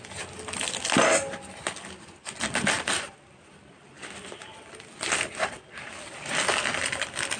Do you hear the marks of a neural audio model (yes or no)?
no